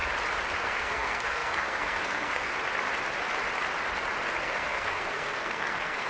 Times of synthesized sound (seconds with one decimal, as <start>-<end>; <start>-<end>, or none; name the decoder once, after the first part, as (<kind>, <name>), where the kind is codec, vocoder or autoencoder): 0.6-2.5 (codec, SNAC); 4.4-6.1